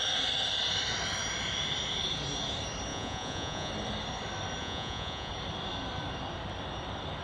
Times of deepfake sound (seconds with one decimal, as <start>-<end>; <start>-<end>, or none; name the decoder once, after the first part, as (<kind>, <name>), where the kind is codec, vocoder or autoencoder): 2.9-3.7 (vocoder, Vocos); 4.6-5.3

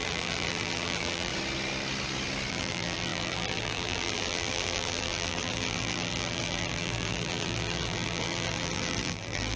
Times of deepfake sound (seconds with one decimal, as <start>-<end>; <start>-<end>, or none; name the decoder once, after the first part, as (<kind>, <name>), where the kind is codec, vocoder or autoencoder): 0.0-1.3 (vocoder, BigVGAN v2); 2.5-9.6

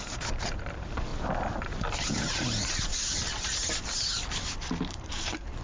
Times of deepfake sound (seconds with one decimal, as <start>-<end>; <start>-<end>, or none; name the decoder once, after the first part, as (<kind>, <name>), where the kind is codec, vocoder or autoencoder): 0.0-1.1 (vocoder, BigVGAN v2); 2.1-2.9; 4.9-5.6

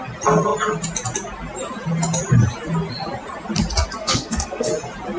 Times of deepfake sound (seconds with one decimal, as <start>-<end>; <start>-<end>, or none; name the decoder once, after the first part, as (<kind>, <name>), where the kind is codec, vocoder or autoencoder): 4.0-4.7 (codec, SNAC)

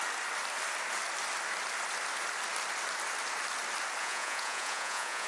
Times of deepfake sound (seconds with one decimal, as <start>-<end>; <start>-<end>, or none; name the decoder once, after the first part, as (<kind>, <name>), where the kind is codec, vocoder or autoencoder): 4.0-5.3 (vocoder, Vocos)

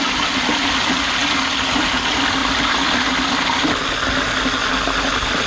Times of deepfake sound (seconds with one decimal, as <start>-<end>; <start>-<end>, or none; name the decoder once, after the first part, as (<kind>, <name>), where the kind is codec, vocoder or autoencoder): none

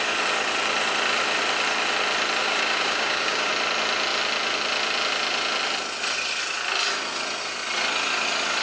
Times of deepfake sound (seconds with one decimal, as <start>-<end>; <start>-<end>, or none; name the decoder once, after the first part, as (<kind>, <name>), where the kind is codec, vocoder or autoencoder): 2.4-3.5 (codec, DAC)

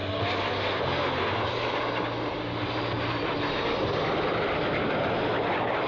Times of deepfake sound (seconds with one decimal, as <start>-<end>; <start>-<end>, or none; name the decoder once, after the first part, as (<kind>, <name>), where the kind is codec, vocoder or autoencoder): none